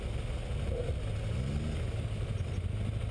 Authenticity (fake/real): real